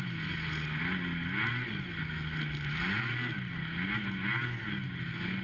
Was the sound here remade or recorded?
recorded